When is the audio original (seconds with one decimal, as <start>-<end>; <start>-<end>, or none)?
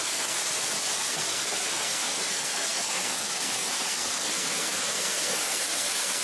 0.4-0.9